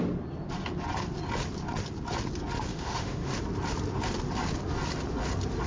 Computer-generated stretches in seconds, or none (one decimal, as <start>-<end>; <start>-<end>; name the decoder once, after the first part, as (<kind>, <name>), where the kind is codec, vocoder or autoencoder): 2.7-3.3 (autoencoder, DAC-VAE)